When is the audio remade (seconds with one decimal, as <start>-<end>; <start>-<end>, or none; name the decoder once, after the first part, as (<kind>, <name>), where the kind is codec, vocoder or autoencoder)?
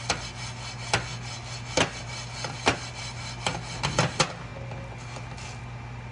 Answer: none